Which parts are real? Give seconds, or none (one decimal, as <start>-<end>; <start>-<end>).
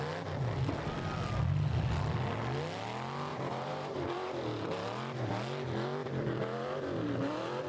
0.0-3.3; 4.0-7.7